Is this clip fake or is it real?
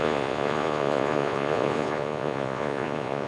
fake